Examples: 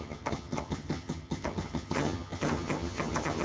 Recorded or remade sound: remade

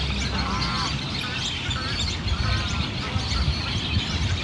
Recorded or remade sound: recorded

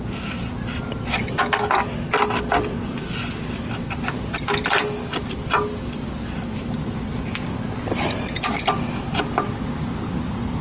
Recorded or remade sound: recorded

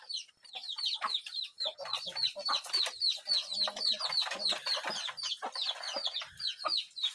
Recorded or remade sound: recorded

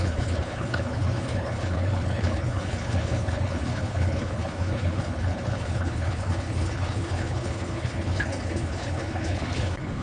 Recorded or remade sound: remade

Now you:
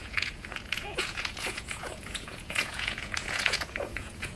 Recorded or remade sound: remade